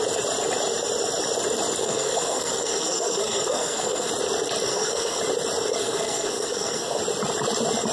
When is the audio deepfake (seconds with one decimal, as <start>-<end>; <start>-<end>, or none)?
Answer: 1.8-4.1; 4.7-5.2; 5.8-7.0